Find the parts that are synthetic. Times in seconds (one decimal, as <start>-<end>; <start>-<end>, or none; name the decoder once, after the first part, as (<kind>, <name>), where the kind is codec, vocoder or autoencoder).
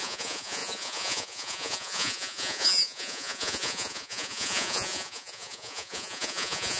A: 0.0-6.8 (vocoder, Vocos)